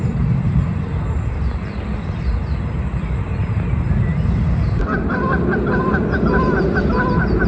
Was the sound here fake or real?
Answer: real